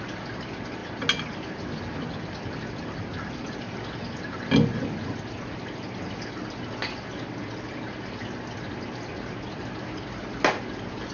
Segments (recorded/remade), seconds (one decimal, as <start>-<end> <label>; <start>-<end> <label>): 0.0-11.1 recorded